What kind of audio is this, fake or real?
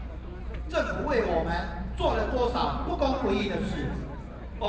real